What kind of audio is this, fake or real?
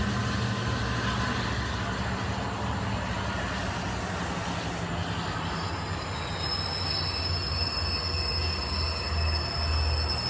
real